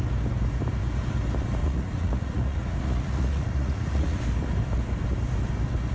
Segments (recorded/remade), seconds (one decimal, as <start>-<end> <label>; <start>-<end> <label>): 0.0-1.6 recorded; 1.6-4.2 remade; 4.2-5.9 recorded